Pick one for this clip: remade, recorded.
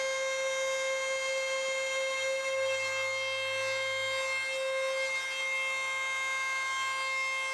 recorded